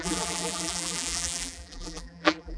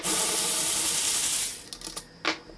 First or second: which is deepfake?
first